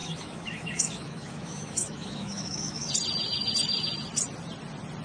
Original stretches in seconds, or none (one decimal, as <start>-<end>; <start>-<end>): 2.9-5.0